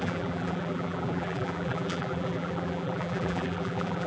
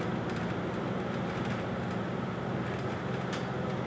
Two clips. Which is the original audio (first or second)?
second